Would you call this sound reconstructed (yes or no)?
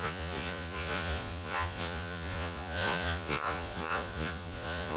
yes